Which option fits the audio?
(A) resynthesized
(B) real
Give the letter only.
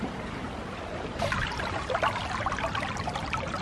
A